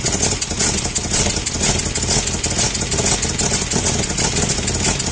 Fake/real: real